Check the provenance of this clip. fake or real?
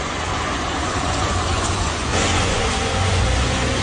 fake